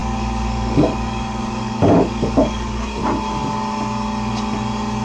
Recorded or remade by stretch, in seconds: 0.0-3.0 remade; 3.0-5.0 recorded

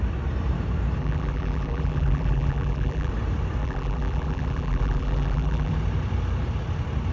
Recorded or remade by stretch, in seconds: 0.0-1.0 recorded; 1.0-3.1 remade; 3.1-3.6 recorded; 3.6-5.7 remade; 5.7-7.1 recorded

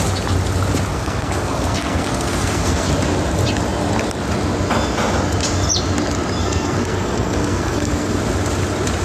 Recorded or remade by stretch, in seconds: 0.0-0.9 recorded; 0.9-2.9 remade; 2.9-6.4 recorded; 6.4-8.2 remade; 8.2-9.0 recorded

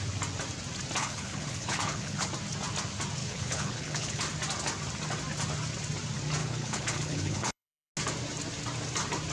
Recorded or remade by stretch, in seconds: 0.0-1.0 recorded; 1.0-2.3 remade; 2.3-3.2 recorded; 3.2-4.2 remade; 4.2-6.4 recorded; 6.4-7.9 remade; 7.9-9.3 recorded

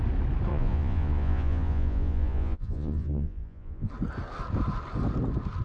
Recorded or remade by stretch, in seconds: 0.0-0.5 recorded; 0.5-3.9 remade; 3.9-5.6 recorded

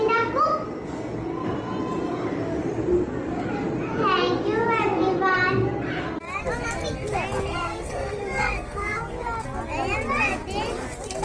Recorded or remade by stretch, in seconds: 0.0-7.5 recorded; 7.5-9.1 remade; 9.1-11.2 recorded